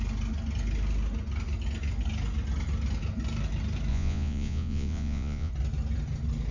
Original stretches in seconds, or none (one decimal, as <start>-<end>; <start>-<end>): 0.0-3.9; 5.5-6.5